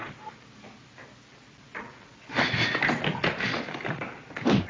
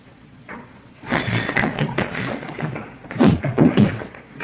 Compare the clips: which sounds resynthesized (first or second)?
second